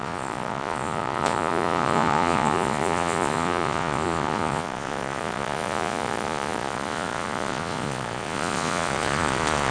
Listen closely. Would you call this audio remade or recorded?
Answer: remade